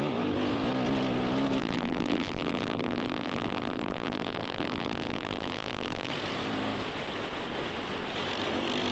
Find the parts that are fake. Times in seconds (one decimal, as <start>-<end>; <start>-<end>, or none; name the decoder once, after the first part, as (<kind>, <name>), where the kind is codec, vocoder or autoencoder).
1.6-6.1 (vocoder, BigVGAN v2)